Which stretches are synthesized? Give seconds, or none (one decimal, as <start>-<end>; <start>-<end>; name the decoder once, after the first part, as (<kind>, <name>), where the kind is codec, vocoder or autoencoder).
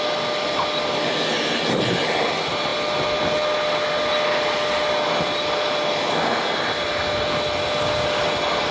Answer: none